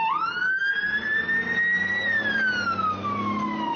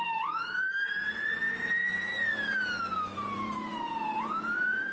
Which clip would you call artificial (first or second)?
second